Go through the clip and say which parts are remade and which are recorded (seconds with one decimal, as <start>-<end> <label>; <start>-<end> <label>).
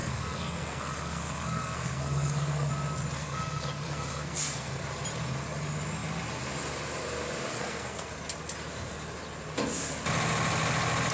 0.0-2.7 remade; 2.7-3.2 recorded; 3.2-4.7 remade; 4.7-7.5 recorded; 7.5-8.1 remade; 8.1-11.1 recorded